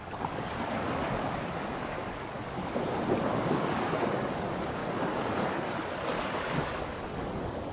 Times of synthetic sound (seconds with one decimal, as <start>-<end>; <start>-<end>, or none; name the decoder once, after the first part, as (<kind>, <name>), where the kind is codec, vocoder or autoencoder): 0.0-2.8 (codec, DAC); 3.4-4.8; 5.5-7.7